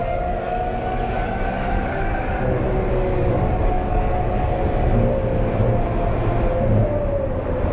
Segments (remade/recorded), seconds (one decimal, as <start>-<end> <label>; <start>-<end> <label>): 0.0-4.6 remade; 4.6-7.7 recorded